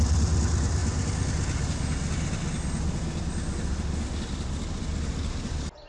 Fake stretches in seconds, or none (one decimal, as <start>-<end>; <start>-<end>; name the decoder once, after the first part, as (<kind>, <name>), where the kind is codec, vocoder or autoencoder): none